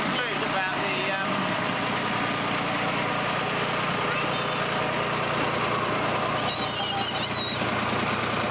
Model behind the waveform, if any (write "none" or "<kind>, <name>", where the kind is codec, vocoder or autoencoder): none